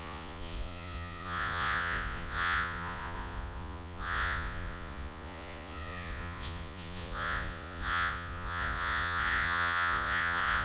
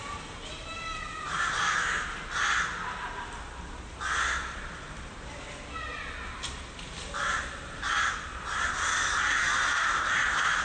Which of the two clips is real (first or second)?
second